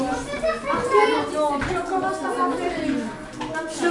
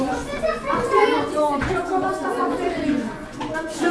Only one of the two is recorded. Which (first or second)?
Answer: first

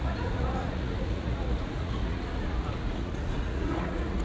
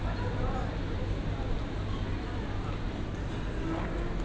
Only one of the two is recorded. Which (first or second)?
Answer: second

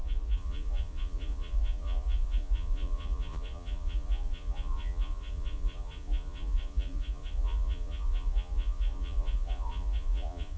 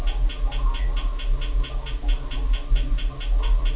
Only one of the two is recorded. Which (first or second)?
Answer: second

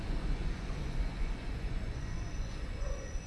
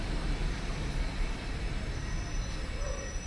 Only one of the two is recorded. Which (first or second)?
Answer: second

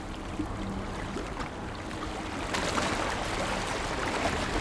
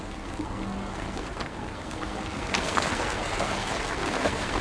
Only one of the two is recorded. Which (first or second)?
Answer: first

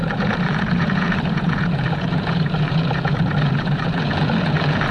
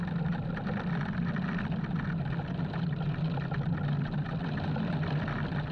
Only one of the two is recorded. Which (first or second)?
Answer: second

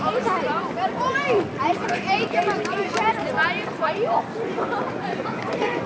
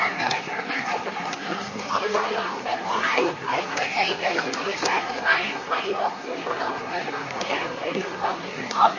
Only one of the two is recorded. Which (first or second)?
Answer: first